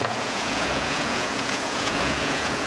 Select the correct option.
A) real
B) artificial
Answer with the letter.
B